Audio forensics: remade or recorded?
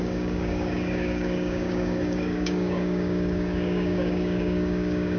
remade